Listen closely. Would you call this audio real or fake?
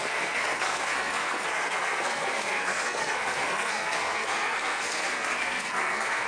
fake